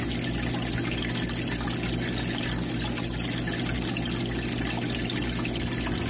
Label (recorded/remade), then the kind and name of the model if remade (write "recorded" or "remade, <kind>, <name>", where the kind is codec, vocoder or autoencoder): recorded